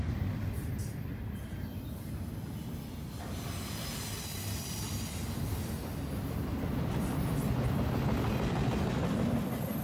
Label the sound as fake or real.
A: real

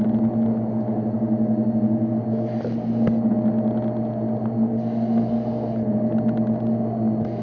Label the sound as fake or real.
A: real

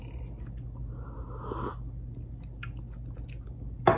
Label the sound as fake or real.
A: real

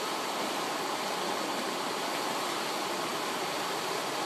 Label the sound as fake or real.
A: real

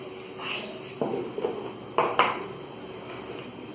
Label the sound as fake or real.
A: real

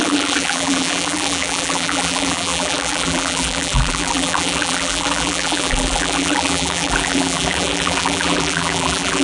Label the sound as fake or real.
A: fake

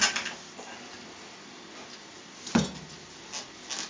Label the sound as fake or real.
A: real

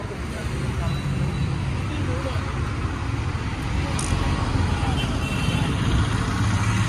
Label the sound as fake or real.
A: real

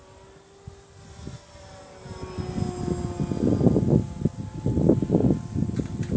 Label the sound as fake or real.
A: real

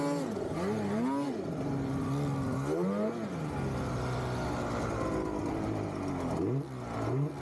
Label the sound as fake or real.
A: real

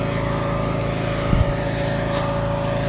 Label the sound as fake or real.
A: real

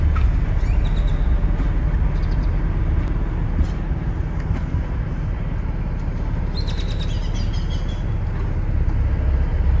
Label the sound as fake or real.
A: real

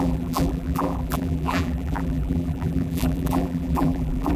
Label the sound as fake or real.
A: fake